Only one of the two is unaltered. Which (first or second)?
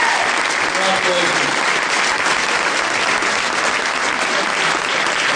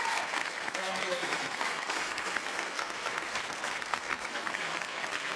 first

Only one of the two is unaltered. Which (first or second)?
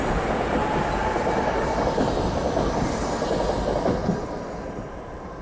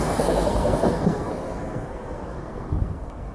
first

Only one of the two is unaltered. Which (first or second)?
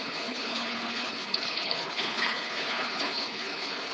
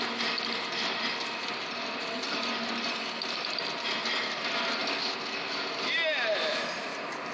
second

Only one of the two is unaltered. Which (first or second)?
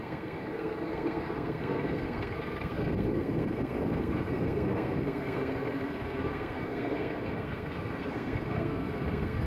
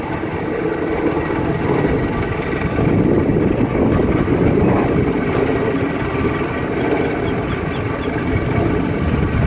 second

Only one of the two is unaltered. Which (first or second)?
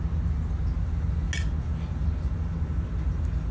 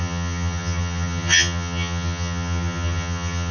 first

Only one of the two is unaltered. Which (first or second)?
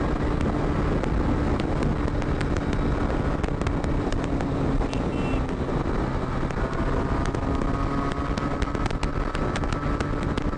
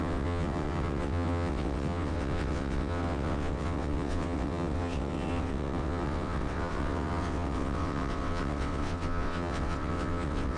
first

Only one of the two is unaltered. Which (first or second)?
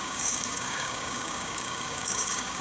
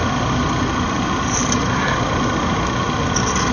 second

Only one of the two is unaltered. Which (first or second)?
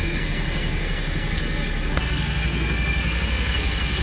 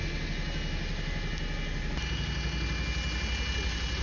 second